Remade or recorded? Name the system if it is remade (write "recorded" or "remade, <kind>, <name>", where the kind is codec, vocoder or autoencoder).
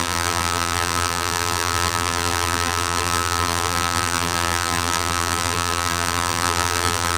remade, vocoder, BigVGAN v2